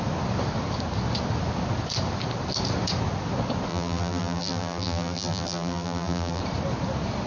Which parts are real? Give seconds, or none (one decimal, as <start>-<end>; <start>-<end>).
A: 0.0-3.7; 6.4-7.3